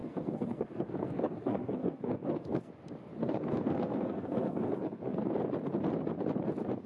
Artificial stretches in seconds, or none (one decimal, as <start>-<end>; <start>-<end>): 0.0-2.7; 3.2-5.2

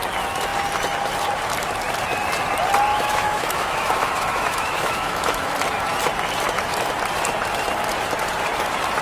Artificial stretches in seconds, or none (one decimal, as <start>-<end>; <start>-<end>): 2.9-5.5

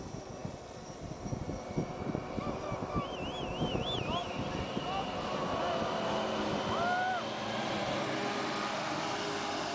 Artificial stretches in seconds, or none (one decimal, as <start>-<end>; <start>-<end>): none

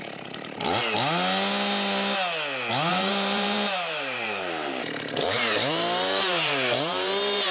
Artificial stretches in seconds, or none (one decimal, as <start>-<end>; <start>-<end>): 2.9-7.5

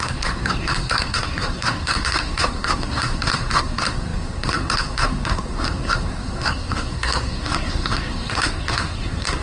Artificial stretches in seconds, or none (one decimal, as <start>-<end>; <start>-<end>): 0.0-9.4